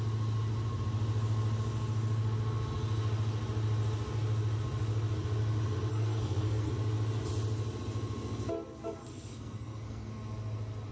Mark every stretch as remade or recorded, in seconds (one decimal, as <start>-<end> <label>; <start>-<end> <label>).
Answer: 0.0-5.9 recorded; 5.9-6.7 remade; 6.7-9.0 recorded; 9.0-10.1 remade; 10.1-10.9 recorded